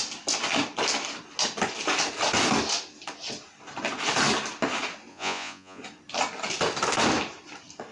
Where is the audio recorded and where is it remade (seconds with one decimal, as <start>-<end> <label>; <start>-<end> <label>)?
0.0-5.1 recorded; 5.1-5.8 remade; 5.8-7.9 recorded